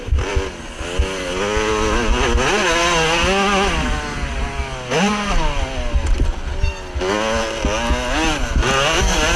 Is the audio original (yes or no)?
yes